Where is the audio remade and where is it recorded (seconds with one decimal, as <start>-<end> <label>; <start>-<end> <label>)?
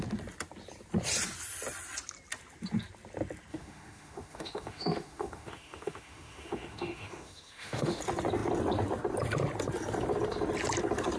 0.0-3.5 recorded; 3.5-8.0 remade; 8.0-11.2 recorded